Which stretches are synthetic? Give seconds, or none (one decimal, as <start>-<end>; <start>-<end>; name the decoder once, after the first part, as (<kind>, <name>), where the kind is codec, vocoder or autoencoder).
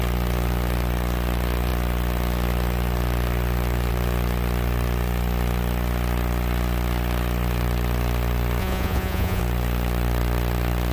8.6-9.4 (vocoder, Vocos)